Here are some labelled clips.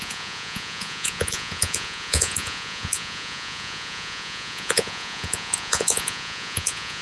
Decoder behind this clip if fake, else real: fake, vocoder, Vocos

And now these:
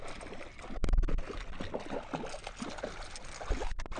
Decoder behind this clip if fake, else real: real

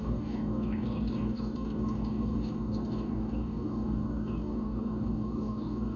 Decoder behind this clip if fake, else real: fake, codec, DAC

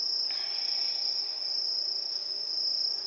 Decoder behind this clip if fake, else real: real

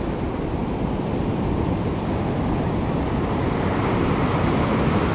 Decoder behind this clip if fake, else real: real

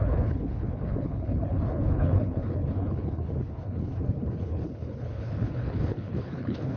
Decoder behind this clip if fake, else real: fake, codec, HILCodec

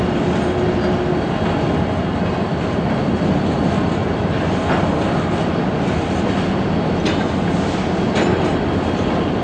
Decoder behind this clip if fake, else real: real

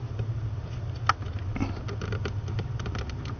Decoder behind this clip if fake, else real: real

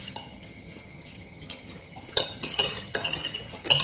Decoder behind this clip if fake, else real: fake, vocoder, HiFi-GAN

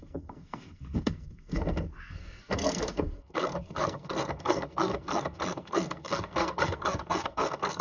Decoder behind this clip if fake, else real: fake, codec, SNAC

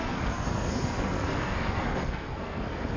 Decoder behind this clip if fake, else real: fake, codec, SNAC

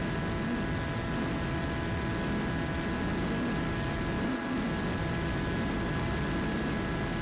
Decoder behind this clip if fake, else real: real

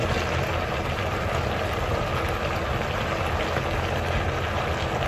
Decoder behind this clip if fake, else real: real